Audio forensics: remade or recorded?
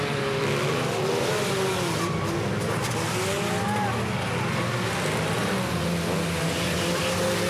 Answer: recorded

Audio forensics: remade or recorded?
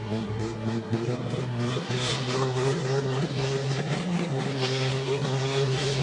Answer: remade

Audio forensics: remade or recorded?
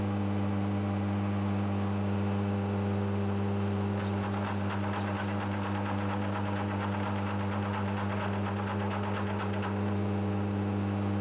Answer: recorded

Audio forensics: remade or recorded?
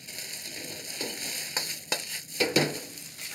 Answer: recorded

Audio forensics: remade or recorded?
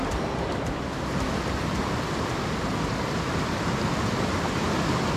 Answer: recorded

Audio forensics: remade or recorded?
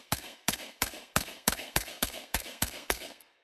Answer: remade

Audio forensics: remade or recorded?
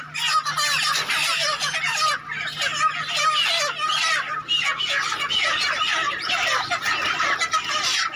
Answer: recorded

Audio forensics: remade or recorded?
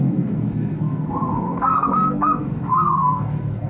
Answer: remade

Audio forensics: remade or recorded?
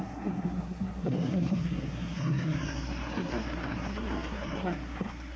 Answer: remade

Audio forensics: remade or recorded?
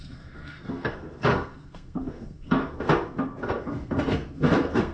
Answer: remade